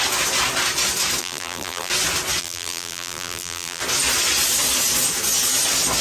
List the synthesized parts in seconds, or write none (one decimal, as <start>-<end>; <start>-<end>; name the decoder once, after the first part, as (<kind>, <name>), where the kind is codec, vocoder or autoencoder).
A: 1.2-1.9 (vocoder, BigVGAN v2); 2.4-3.8